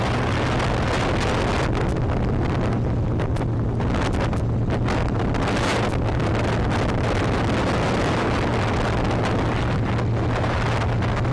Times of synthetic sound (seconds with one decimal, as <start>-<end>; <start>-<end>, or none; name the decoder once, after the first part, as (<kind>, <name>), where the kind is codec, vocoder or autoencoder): none

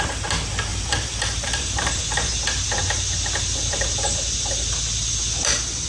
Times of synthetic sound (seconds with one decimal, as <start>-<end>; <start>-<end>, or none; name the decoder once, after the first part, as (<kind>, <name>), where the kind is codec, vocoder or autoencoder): 0.7-2.0 (vocoder, BigVGAN v2)

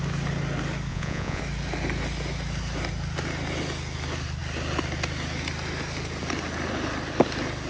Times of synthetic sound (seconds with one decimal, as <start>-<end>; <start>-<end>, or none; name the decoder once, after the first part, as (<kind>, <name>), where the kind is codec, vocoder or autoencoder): 0.9-1.4 (vocoder, Vocos)

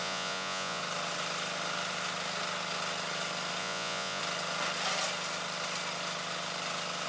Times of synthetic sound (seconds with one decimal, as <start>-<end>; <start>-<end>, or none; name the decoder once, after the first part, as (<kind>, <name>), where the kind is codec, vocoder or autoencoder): 0.0-0.8 (vocoder, Vocos); 3.6-4.2

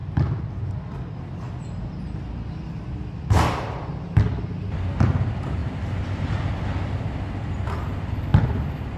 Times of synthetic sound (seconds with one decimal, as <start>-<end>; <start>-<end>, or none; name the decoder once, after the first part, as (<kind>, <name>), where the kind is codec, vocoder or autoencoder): none

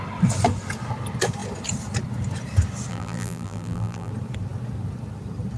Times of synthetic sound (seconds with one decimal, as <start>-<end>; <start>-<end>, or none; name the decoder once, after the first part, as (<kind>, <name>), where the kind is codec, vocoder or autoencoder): 2.9-4.1 (vocoder, BigVGAN v2)

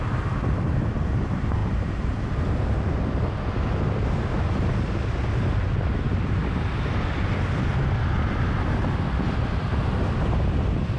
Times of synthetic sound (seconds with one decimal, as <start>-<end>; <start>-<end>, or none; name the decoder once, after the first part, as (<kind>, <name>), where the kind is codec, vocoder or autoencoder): none